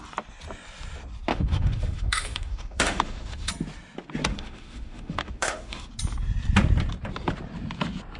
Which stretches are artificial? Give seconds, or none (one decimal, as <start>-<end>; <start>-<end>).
1.3-3.5; 4.3-5.9